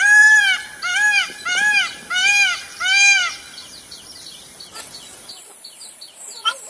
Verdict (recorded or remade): remade